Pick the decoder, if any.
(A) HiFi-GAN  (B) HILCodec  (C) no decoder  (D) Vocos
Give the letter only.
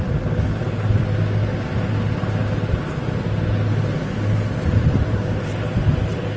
C